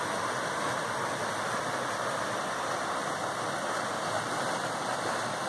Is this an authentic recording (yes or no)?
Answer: yes